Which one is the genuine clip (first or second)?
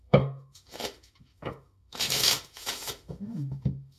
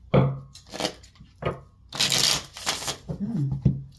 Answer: second